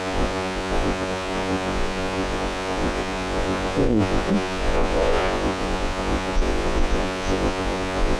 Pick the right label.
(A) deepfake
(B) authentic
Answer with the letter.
A